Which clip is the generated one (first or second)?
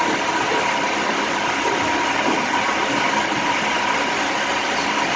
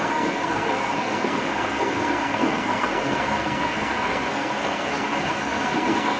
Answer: second